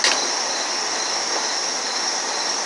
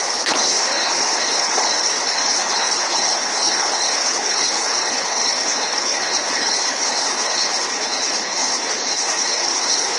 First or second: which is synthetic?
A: second